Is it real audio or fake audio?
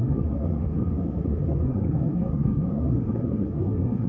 fake